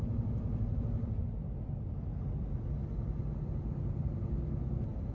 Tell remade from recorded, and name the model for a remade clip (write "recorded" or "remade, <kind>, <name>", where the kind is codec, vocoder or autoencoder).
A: recorded